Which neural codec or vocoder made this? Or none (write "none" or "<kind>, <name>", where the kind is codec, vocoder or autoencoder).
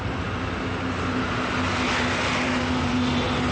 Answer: none